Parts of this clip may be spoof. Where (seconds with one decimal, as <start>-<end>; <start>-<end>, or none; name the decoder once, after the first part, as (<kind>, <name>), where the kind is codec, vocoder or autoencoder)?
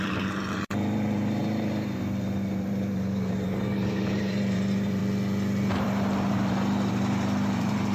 0.0-5.0 (vocoder, BigVGAN v2); 5.7-7.9